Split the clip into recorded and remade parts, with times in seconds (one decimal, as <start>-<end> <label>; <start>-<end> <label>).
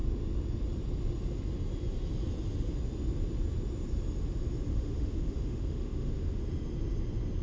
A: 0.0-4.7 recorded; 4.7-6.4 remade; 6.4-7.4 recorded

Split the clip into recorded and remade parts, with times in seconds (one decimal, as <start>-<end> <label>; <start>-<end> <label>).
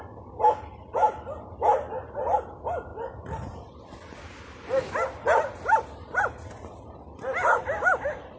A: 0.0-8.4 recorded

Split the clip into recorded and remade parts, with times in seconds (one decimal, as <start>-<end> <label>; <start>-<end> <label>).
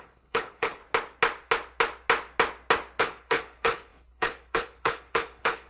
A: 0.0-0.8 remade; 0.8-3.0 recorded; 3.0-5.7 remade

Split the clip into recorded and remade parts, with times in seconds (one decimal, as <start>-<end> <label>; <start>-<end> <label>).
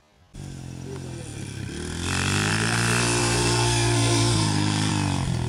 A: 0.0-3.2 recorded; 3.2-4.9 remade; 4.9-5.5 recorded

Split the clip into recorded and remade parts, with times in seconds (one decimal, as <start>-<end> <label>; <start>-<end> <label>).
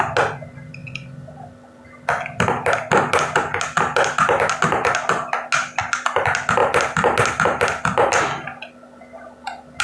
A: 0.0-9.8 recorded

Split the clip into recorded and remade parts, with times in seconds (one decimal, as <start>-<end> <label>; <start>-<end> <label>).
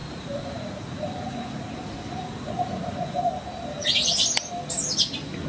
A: 0.0-3.3 remade; 3.3-5.5 recorded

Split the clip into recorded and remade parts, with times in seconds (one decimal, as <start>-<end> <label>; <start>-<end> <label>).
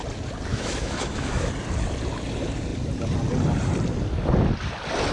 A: 0.0-0.5 recorded; 0.5-1.5 remade; 1.5-5.1 recorded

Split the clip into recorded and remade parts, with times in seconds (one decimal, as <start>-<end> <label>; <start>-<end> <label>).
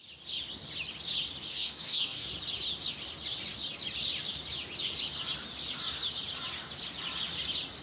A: 0.0-1.5 recorded; 1.5-2.3 remade; 2.3-7.8 recorded